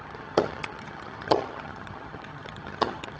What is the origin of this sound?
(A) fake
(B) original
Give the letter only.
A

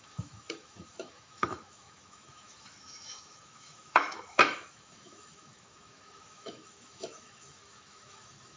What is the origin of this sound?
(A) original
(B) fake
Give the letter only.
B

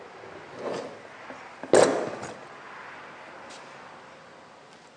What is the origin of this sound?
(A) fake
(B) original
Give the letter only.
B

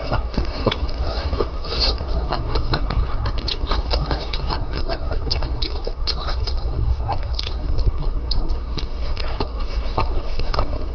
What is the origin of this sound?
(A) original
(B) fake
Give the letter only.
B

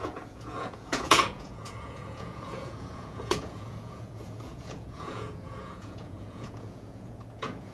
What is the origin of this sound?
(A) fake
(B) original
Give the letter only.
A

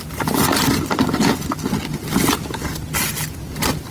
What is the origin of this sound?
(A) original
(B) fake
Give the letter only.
A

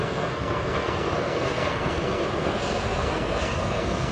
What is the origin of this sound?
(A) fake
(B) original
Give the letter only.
A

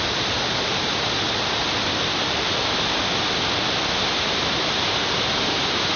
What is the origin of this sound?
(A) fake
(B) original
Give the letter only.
B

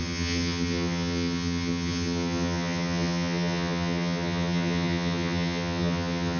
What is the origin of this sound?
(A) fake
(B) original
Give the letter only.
A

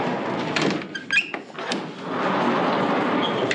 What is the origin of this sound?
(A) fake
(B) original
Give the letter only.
B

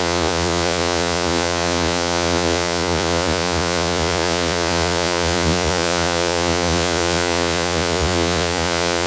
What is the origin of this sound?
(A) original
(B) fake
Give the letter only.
B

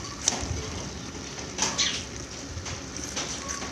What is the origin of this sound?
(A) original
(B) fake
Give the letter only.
A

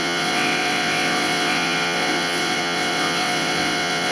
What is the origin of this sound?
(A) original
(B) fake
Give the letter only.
B